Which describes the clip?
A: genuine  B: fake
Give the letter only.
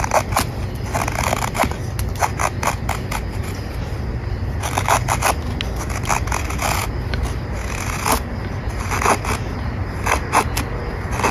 A